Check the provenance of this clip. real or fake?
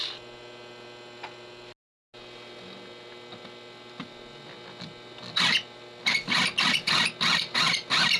real